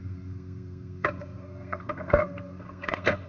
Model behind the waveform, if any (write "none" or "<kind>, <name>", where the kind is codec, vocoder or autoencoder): codec, SNAC